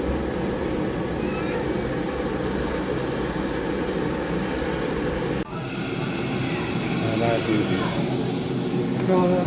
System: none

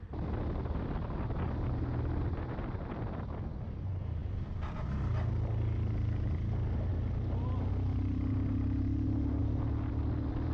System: none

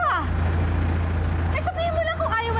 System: none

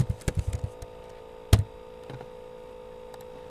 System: none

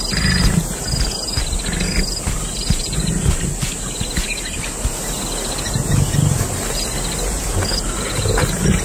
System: none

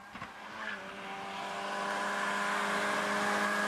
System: none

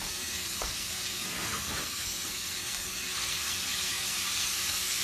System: codec, SNAC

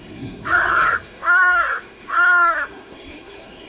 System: codec, SNAC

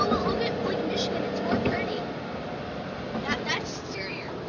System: none